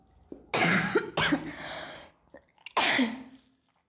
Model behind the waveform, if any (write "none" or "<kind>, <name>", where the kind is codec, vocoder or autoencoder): none